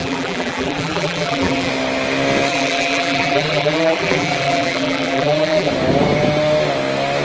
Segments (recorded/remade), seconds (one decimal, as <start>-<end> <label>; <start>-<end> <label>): 0.0-1.7 remade; 1.7-2.5 recorded; 2.5-5.7 remade; 5.7-7.2 recorded